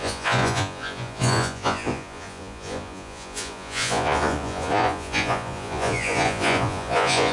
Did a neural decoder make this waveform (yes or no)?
yes